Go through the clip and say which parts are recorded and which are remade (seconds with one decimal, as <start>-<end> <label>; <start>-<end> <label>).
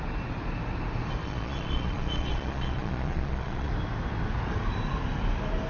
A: 0.0-1.2 recorded; 1.2-3.7 remade; 3.7-5.7 recorded